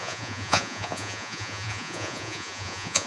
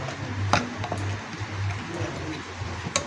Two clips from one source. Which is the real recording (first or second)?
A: second